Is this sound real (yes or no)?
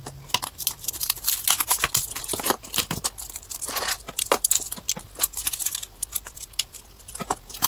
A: yes